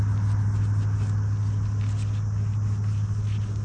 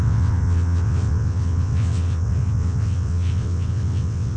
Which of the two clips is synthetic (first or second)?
second